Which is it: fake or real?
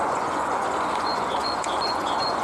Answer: fake